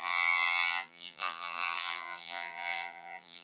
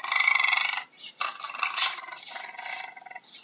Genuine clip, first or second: second